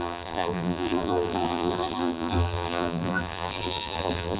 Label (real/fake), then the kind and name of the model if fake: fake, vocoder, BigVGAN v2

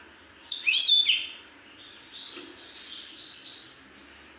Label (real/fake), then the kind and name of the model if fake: fake, vocoder, BigVGAN v2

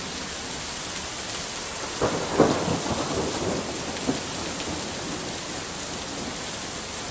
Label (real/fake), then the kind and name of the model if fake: real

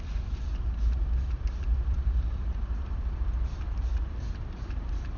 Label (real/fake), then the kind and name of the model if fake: fake, vocoder, BigVGAN v2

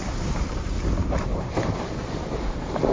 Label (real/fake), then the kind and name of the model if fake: fake, vocoder, BigVGAN v2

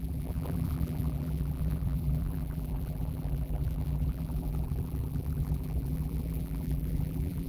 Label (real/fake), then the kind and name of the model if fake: fake, vocoder, BigVGAN v2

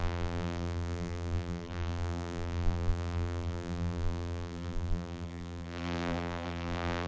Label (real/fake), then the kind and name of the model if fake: fake, vocoder, BigVGAN v2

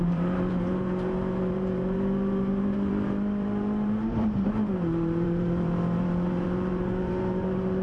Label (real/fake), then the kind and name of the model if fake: fake, vocoder, BigVGAN v2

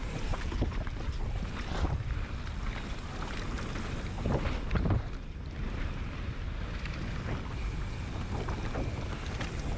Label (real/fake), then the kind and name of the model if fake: real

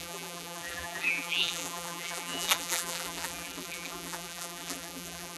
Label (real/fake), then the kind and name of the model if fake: fake, vocoder, BigVGAN v2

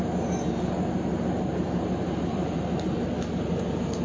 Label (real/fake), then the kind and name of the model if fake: fake, vocoder, BigVGAN v2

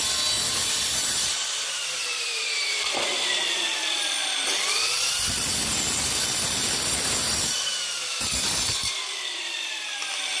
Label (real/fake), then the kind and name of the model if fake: fake, vocoder, BigVGAN v2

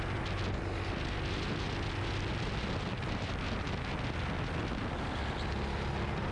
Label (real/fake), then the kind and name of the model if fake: real